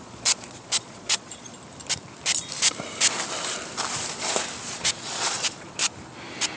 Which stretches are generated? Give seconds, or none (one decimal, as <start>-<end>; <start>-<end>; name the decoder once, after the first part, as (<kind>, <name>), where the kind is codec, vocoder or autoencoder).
0.0-1.5 (vocoder, Vocos); 4.6-5.8